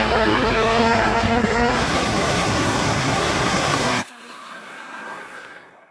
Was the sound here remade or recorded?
remade